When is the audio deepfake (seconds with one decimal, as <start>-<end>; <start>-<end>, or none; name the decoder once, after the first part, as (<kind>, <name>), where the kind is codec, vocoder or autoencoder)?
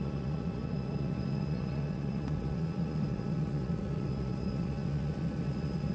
0.0-5.9 (vocoder, Vocos)